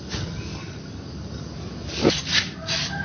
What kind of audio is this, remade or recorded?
recorded